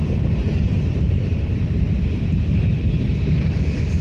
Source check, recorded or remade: remade